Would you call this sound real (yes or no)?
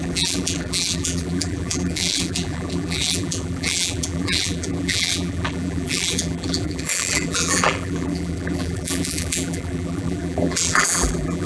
no